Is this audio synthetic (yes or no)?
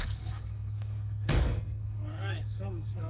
yes